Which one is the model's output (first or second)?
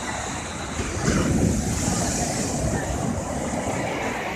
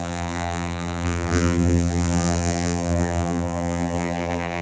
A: second